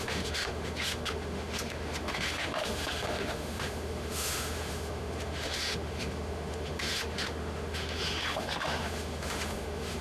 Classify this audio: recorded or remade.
remade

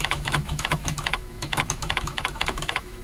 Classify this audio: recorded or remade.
remade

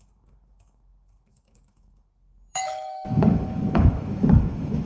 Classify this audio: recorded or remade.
remade